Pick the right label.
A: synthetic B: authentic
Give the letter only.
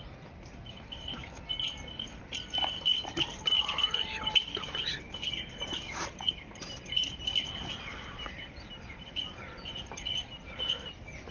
B